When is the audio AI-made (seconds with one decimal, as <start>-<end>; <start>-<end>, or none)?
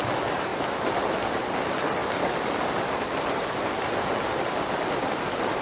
none